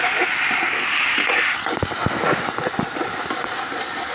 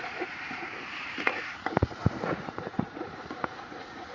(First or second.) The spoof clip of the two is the second